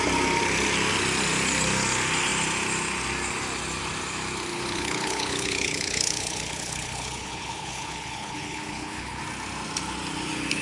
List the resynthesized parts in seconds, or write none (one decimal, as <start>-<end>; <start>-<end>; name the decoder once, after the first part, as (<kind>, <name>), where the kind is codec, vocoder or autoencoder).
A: 4.5-9.2 (codec, HILCodec)